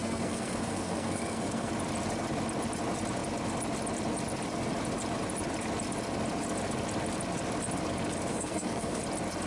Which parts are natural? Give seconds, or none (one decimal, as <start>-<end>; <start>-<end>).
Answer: 1.7-8.3; 9.0-9.5

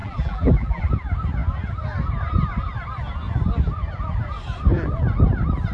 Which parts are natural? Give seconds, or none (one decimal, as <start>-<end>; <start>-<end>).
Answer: 0.8-5.7

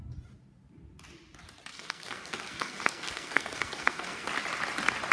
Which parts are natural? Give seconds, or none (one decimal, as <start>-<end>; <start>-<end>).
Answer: 0.0-1.7; 4.3-5.1